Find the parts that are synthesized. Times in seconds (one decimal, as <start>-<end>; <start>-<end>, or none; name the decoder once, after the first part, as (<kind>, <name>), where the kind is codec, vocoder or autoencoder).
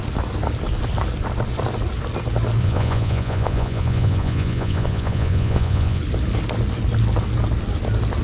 2.6-6.0 (vocoder, Vocos)